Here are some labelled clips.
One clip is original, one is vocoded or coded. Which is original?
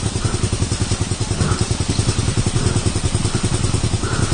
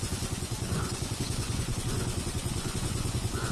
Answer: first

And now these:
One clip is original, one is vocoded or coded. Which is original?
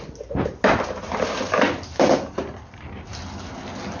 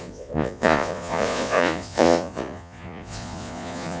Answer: first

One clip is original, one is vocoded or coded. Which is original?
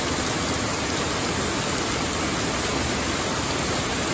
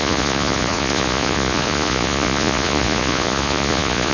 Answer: first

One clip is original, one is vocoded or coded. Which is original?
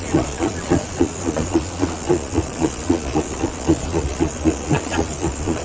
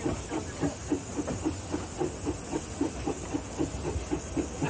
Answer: second